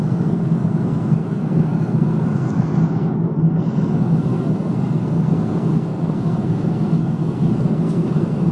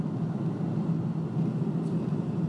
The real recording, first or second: second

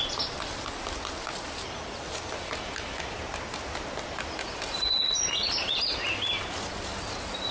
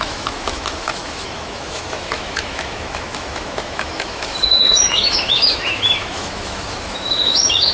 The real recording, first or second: first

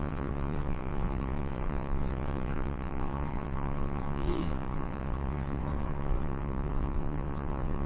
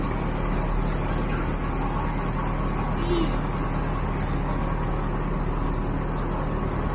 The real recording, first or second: second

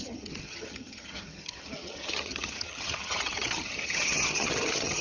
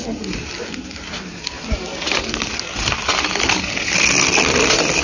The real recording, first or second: second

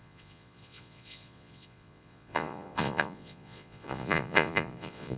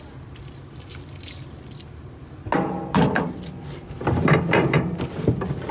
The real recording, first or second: second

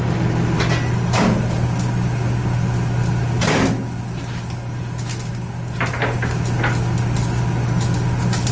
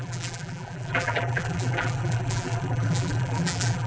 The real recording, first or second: first